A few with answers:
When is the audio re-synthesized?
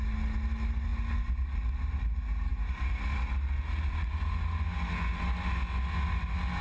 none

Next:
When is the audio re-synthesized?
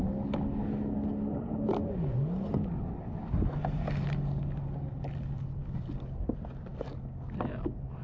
none